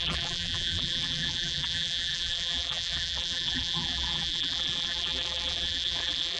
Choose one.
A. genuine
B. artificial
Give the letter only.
B